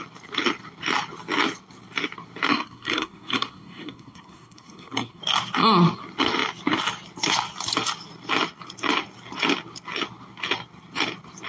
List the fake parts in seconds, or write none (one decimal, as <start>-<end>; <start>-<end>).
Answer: 2.5-5.2